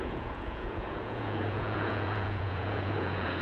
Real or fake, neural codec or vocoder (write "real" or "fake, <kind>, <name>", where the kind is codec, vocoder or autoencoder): fake, vocoder, Vocos